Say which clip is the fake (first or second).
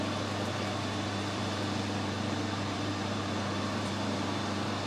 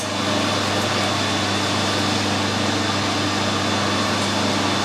first